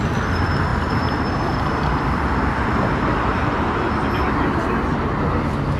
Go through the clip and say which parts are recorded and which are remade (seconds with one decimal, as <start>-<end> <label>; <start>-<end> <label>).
0.0-0.7 recorded; 0.7-3.5 remade; 3.5-5.8 recorded